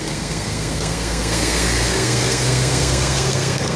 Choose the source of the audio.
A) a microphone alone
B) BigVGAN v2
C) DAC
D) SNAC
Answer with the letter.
D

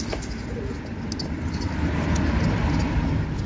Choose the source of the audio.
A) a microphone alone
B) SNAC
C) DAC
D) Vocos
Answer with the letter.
A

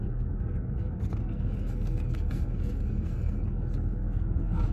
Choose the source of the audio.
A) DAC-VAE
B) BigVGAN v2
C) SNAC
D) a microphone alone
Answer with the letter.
C